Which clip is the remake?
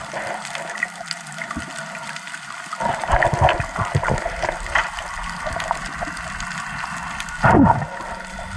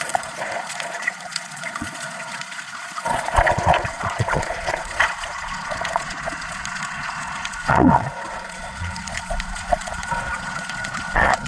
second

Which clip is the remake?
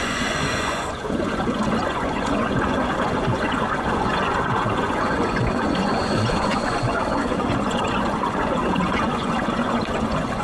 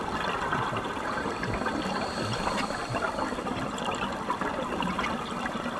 first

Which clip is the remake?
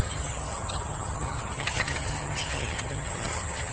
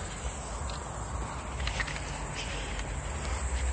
first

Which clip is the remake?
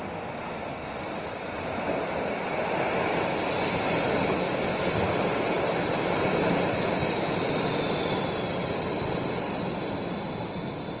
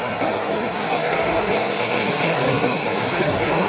second